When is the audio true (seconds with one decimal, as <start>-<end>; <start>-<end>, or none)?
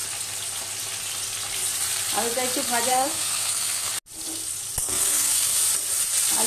0.0-2.9; 3.9-4.8; 5.6-6.5